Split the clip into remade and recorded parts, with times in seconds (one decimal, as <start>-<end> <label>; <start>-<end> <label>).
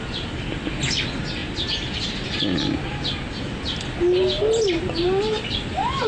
0.0-6.1 recorded